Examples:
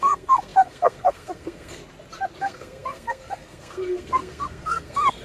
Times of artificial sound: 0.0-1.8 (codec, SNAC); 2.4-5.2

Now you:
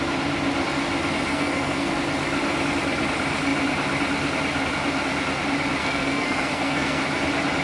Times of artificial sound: 1.3-1.9 (codec, SNAC); 5.8-7.0

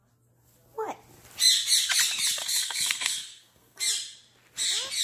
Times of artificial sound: 2.4-3.8 (codec, SNAC)

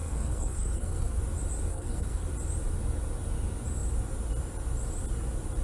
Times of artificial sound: 0.0-1.2 (codec, SNAC); 1.7-2.3

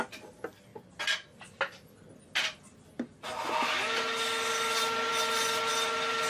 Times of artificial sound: none